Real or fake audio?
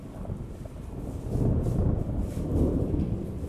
real